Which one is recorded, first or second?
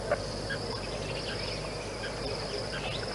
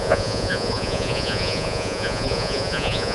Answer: first